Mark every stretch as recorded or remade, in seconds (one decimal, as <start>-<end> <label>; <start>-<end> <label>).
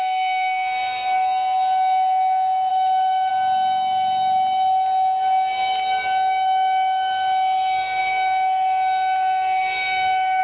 0.0-2.7 recorded; 2.7-3.3 remade; 3.3-10.4 recorded